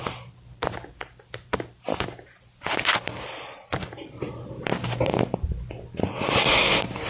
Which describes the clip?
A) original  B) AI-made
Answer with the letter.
A